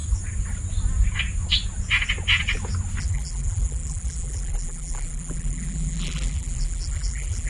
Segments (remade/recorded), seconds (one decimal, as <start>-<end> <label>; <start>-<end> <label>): 0.0-3.0 recorded; 3.0-7.5 remade